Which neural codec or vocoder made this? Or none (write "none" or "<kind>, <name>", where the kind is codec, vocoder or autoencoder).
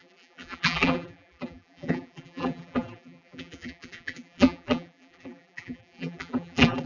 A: vocoder, BigVGAN v2